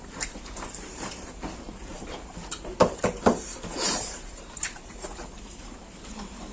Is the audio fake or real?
fake